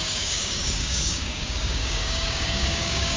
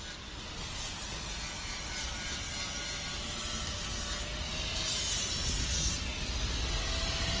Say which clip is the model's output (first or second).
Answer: first